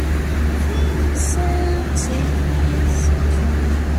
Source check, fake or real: real